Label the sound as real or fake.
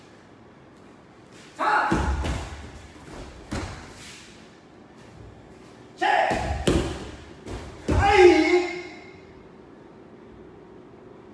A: real